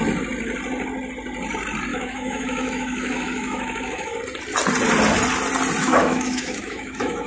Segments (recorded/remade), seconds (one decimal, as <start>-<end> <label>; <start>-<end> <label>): 0.0-1.9 recorded; 1.9-4.2 remade; 4.2-5.8 recorded; 5.8-7.3 remade